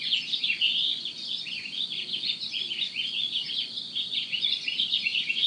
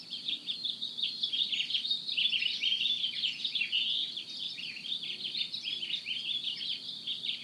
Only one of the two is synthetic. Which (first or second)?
first